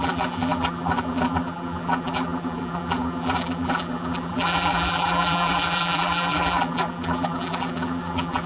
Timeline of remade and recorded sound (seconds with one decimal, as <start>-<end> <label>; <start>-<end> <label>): 0.0-8.5 remade